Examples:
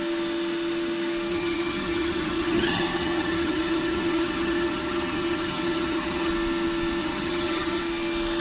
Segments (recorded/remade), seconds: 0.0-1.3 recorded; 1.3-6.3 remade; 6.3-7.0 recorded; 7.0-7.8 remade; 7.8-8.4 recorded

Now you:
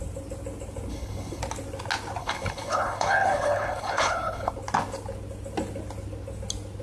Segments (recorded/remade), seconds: 0.0-0.9 recorded; 0.9-1.4 remade; 1.4-2.2 recorded; 2.2-4.5 remade; 4.5-6.8 recorded